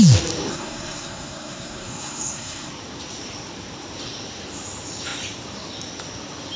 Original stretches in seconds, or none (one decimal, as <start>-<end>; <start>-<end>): 0.0-0.5; 2.7-6.6